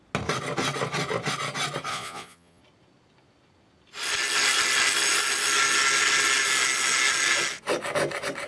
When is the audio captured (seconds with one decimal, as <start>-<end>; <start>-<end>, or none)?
0.0-1.9; 2.6-8.5